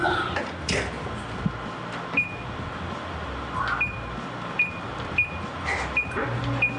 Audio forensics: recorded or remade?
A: recorded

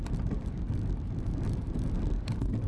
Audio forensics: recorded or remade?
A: recorded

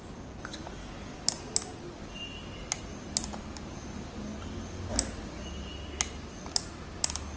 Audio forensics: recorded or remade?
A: recorded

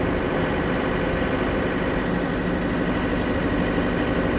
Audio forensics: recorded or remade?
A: recorded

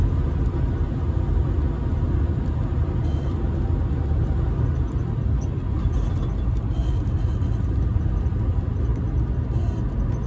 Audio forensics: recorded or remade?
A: recorded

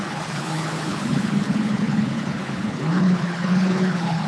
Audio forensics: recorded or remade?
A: remade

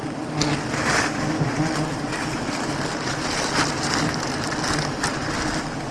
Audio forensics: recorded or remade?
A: recorded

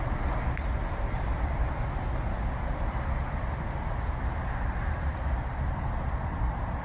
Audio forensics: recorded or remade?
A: recorded